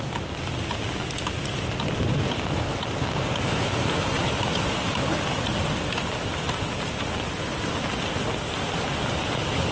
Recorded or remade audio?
recorded